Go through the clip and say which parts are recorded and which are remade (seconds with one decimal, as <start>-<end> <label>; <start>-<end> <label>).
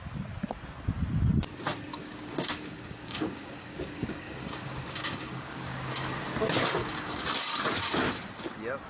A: 0.0-1.9 recorded; 1.9-5.9 remade; 5.9-6.8 recorded; 6.8-7.3 remade; 7.3-8.9 recorded